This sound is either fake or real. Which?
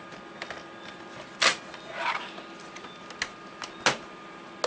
real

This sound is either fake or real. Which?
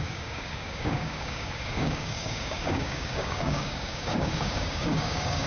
fake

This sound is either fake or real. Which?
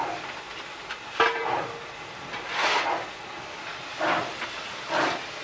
real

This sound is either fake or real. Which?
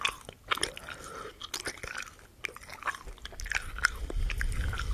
real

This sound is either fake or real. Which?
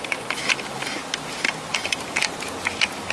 real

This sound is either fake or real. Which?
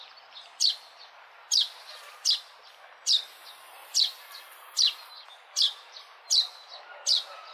real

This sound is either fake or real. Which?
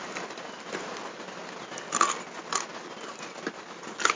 real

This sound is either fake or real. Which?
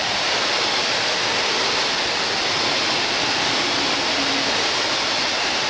real